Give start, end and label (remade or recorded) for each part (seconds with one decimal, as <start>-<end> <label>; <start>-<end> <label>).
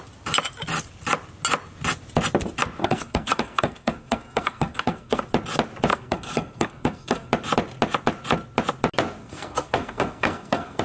0.0-2.8 recorded; 2.8-5.2 remade; 5.2-5.9 recorded; 5.9-7.3 remade; 7.3-9.2 recorded; 9.2-10.8 remade